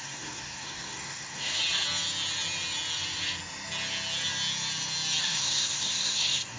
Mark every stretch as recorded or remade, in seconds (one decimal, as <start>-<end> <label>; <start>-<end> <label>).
0.0-1.6 remade; 1.6-5.2 recorded; 5.2-6.6 remade